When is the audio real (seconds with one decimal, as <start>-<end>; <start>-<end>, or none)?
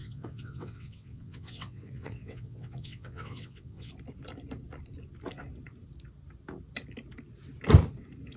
3.9-8.4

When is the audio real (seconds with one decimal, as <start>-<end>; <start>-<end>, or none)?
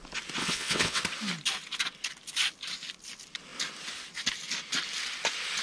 0.0-0.4; 1.0-5.6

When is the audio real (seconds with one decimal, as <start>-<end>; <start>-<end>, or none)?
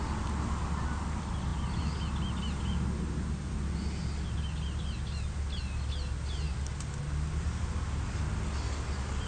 0.0-9.3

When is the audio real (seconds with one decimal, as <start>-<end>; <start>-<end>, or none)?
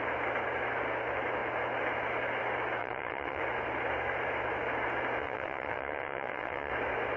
0.0-2.8; 3.4-5.2; 6.7-7.2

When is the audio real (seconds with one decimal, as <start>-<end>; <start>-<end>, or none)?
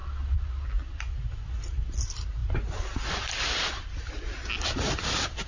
0.7-5.5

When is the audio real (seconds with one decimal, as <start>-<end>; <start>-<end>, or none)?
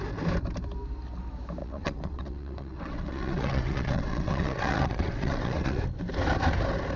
0.0-1.6; 5.8-7.0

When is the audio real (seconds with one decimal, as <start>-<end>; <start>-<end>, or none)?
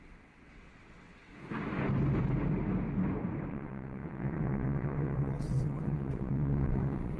1.3-3.5